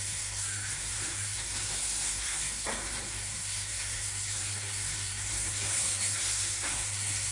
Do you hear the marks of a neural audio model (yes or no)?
yes